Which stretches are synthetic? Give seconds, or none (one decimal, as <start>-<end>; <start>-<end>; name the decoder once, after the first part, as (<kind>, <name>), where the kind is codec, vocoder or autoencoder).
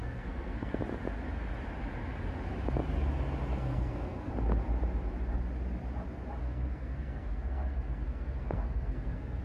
0.0-0.8 (codec, SNAC); 3.5-4.3; 6.4-9.4